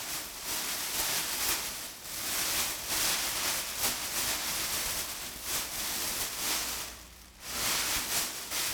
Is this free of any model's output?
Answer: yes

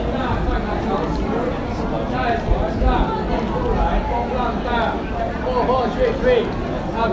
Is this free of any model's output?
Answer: yes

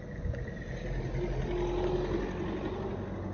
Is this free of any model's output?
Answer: yes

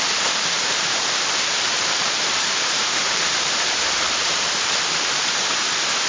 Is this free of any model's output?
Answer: no